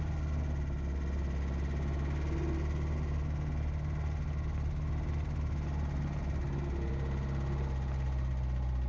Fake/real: real